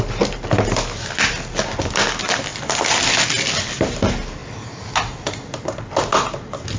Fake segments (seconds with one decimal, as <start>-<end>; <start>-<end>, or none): none